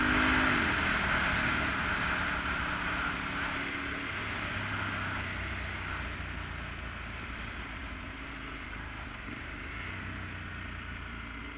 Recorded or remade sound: recorded